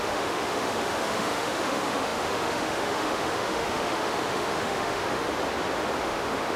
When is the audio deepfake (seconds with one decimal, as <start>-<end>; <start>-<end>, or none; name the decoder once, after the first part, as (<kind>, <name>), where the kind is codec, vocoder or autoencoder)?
0.0-5.3 (autoencoder, DAC-VAE); 6.0-6.6